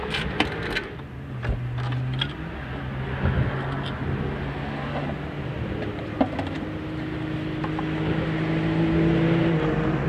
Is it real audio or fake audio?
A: real